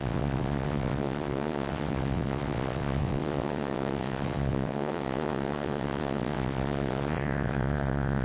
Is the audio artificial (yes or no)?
yes